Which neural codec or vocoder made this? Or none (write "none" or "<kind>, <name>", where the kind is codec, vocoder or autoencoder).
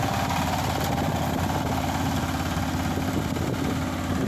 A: none